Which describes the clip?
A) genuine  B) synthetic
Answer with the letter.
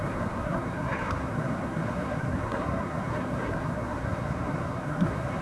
B